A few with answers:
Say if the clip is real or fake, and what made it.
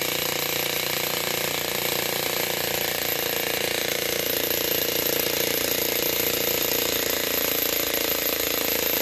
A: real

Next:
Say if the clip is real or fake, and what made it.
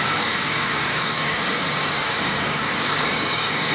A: fake, codec, DAC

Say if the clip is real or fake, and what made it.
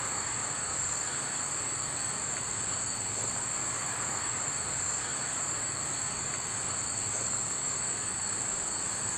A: fake, codec, DAC